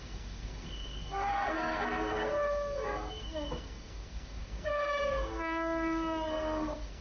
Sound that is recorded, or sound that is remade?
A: remade